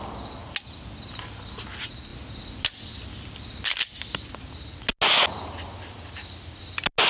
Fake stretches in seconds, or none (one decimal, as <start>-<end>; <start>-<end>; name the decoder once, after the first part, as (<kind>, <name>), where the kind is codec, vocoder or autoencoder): none